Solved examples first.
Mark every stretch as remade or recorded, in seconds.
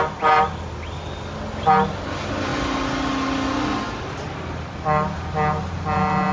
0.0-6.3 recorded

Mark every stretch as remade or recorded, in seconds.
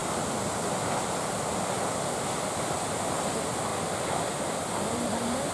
0.0-5.5 recorded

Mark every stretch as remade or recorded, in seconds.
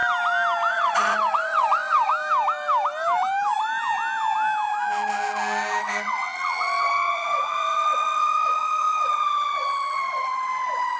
0.0-0.7 recorded; 0.7-2.1 remade; 2.1-5.8 recorded; 5.8-11.0 remade